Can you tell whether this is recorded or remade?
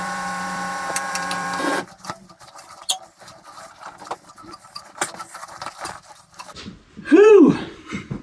remade